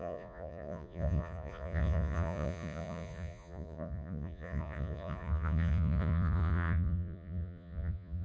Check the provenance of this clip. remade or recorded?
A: remade